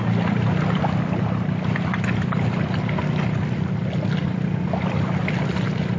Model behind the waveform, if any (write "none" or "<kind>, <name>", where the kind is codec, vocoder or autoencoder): none